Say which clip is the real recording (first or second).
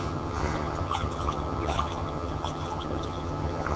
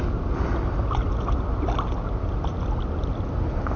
second